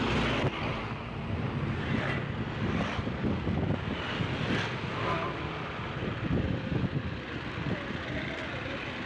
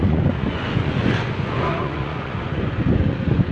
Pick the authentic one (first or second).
first